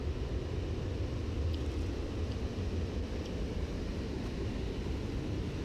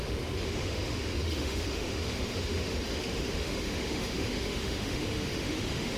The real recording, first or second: first